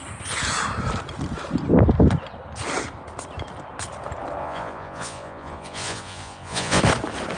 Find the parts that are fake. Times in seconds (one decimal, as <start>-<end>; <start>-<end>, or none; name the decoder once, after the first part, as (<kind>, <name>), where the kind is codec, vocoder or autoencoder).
4.4-6.8 (vocoder, Vocos)